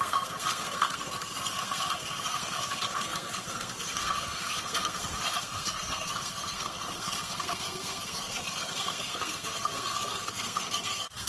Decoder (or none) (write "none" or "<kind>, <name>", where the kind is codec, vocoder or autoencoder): codec, SNAC